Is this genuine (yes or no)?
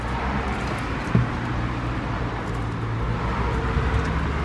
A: yes